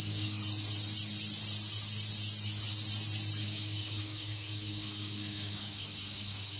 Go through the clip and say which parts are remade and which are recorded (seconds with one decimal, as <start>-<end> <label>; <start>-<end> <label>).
0.0-0.4 remade; 0.4-3.4 recorded; 3.4-6.6 remade

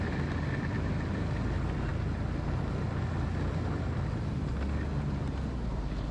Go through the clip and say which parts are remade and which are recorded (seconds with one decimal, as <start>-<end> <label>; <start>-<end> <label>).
0.0-6.1 recorded

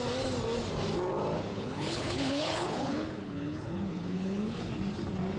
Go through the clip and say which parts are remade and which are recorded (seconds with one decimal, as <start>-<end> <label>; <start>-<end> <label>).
0.0-1.5 recorded; 1.5-4.7 remade; 4.7-5.4 recorded

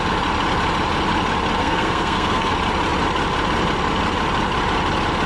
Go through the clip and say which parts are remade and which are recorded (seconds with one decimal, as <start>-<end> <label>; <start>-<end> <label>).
0.0-1.6 recorded; 1.6-2.5 remade; 2.5-5.3 recorded

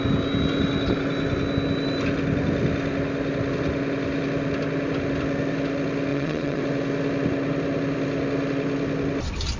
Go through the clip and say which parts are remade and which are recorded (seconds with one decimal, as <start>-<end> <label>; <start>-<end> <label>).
0.0-6.1 recorded; 6.1-6.6 remade; 6.6-9.6 recorded

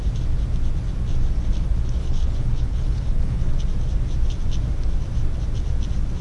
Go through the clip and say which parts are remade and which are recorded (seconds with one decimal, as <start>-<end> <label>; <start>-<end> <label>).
0.0-2.0 recorded; 2.0-3.5 remade; 3.5-6.2 recorded

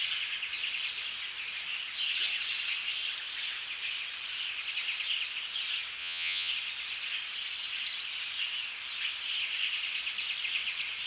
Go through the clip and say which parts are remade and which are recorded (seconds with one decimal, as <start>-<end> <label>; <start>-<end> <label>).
0.0-6.0 recorded; 6.0-6.5 remade; 6.5-11.1 recorded